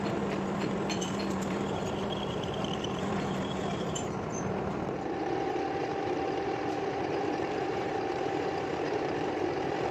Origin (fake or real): fake